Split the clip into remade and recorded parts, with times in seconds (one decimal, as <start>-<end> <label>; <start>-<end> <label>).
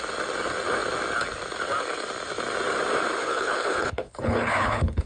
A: 0.0-3.2 recorded; 3.2-5.1 remade